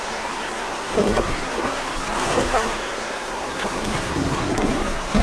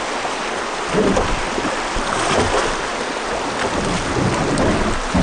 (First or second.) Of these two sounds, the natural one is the second